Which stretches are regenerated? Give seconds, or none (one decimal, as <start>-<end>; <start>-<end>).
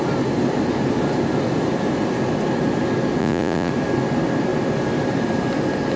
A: 3.2-3.7